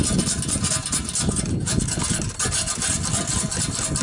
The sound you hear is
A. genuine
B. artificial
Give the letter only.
A